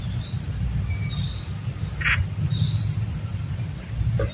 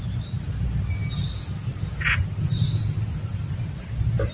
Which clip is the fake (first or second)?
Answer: first